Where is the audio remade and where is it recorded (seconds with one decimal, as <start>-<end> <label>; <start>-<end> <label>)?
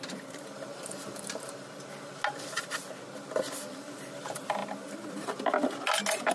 0.0-0.7 recorded; 0.7-1.6 remade; 1.6-6.3 recorded